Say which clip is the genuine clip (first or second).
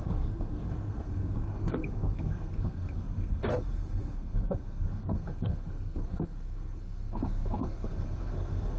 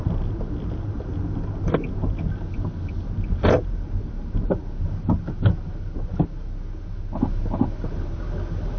second